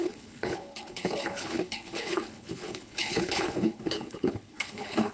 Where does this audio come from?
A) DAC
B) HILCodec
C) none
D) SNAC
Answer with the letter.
B